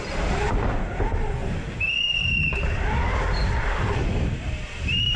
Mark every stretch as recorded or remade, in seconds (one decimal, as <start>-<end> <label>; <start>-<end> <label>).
0.0-1.4 recorded; 1.4-4.5 remade; 4.5-5.2 recorded